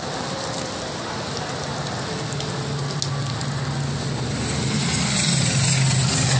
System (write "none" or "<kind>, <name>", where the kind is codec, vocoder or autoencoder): none